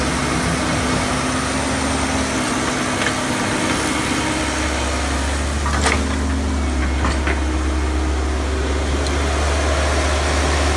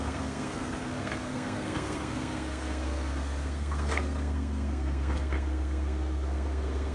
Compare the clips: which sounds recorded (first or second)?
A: first